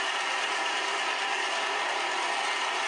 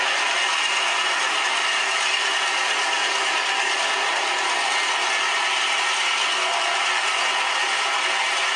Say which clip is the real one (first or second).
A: second